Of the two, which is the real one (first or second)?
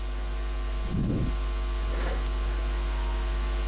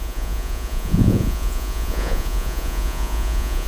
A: first